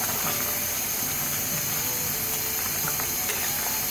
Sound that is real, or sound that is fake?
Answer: real